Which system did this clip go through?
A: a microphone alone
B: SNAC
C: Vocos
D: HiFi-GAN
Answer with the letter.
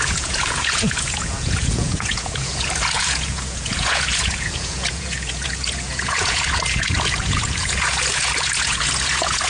C